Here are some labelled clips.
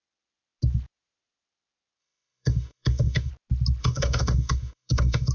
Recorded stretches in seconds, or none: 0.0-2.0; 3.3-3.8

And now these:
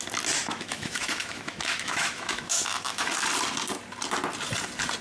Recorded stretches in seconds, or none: 0.0-0.4; 3.1-5.0

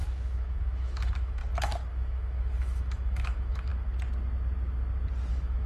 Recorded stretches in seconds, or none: 1.4-1.9; 3.7-5.3

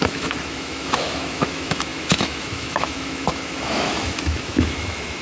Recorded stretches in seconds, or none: none